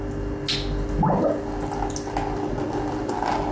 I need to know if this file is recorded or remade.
recorded